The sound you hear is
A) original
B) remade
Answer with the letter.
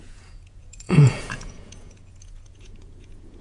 B